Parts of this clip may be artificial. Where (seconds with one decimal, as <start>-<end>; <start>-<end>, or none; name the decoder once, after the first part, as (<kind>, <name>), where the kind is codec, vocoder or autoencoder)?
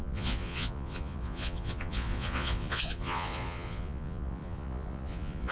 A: 0.0-5.5 (vocoder, Vocos)